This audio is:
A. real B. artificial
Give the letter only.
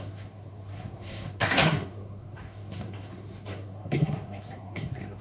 B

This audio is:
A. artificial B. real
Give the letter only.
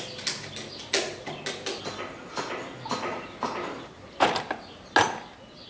B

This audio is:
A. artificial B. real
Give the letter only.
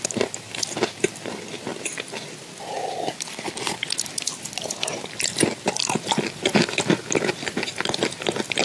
B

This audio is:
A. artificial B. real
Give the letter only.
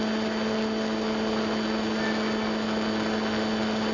B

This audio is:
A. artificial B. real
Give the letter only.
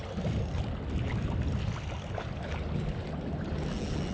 B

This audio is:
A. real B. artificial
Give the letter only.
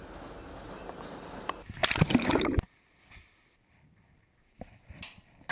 A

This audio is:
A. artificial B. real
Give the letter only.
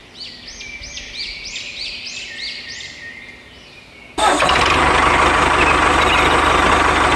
B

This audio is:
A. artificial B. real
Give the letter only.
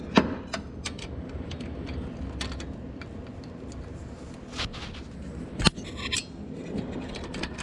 B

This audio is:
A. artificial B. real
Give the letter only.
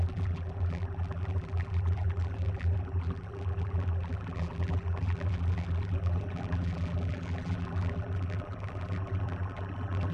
A